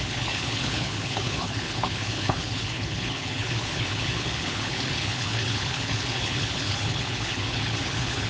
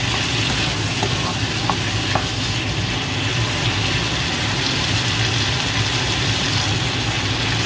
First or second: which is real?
second